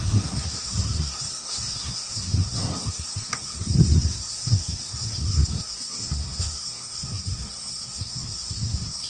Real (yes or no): no